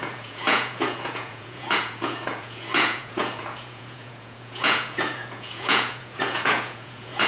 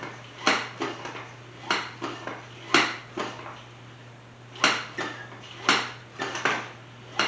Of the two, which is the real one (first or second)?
second